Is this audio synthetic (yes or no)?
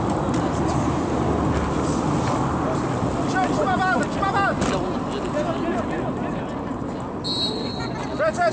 no